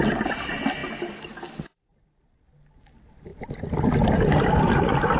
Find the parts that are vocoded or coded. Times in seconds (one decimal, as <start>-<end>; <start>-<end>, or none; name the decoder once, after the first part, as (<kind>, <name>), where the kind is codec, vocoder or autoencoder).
3.3-5.2 (vocoder, BigVGAN v2)

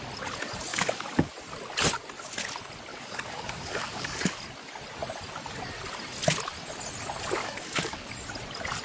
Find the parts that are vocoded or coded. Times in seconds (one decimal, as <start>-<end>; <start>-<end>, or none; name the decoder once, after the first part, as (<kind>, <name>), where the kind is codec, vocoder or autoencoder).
0.7-1.3 (codec, DAC); 2.9-4.4; 7.4-8.1

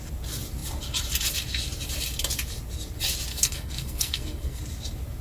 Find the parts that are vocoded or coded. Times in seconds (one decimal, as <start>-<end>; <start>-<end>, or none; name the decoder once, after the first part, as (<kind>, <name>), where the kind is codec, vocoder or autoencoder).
3.3-4.6 (codec, SNAC)